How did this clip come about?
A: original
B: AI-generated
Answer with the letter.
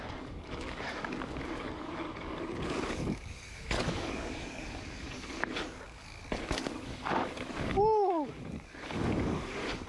B